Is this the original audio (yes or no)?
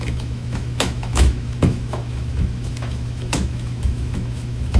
no